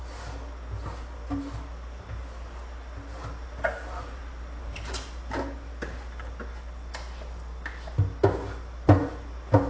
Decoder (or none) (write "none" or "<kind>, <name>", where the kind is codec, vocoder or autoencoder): none